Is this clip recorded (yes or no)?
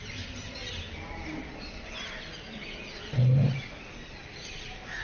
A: yes